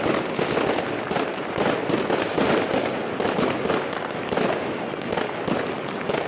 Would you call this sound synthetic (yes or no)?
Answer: no